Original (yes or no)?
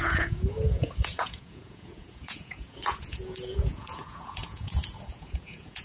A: no